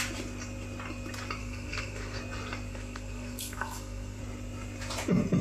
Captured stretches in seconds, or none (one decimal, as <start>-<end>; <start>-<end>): 0.0-1.4; 2.2-2.7; 4.2-5.4